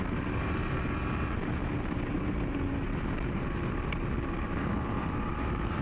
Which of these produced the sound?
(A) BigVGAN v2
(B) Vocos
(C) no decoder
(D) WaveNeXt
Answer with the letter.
A